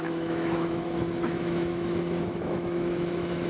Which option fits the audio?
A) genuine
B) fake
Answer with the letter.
B